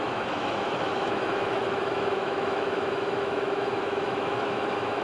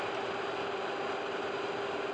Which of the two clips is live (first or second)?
second